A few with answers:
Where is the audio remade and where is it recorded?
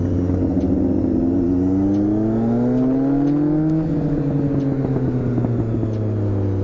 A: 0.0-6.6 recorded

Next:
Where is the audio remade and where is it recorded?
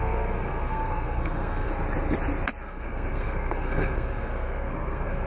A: 0.0-1.7 remade; 1.7-2.6 recorded; 2.6-5.3 remade